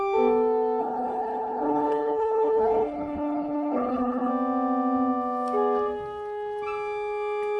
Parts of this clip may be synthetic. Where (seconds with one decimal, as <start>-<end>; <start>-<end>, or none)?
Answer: 0.8-4.3